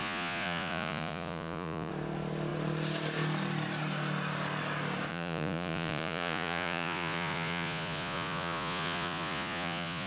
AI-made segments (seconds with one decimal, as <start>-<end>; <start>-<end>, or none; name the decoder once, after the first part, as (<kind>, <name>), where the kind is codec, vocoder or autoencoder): 0.0-1.9 (vocoder, Vocos); 5.1-10.1